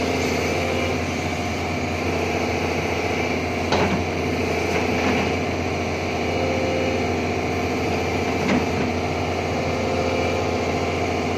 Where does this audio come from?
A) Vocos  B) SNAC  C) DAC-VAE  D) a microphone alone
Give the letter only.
D